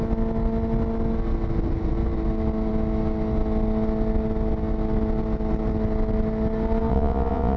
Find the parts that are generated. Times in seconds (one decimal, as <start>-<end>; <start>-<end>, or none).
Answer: 6.9-7.6

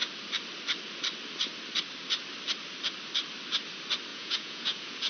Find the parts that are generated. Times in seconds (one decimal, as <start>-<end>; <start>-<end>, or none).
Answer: 4.1-5.1

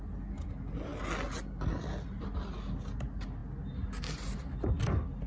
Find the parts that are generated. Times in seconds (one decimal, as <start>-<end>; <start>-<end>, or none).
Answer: none